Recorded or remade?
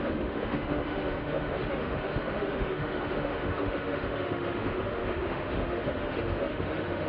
remade